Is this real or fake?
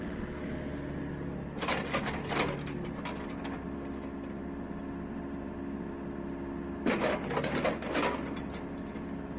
real